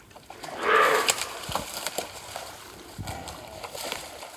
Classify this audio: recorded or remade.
recorded